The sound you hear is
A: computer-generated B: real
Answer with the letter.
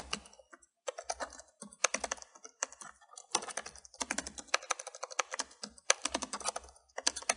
B